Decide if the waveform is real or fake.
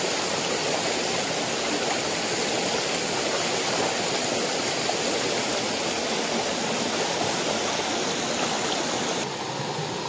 real